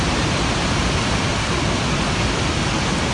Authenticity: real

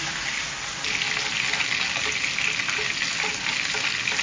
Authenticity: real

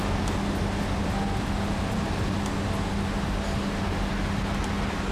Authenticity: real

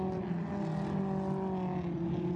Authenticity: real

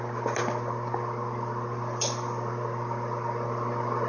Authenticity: real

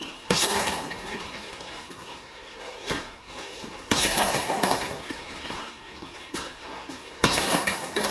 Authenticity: fake